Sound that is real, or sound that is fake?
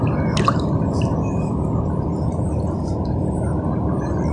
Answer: real